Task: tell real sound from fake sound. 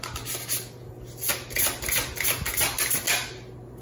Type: real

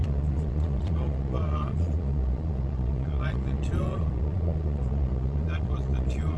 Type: fake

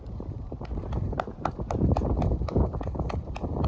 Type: fake